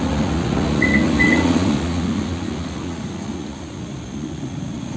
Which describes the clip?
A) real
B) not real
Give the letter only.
B